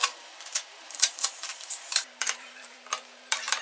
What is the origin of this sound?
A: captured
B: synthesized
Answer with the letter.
B